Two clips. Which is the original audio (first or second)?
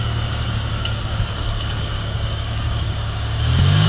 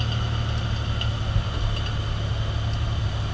second